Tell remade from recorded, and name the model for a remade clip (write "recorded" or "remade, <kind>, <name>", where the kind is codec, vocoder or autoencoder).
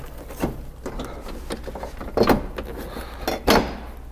recorded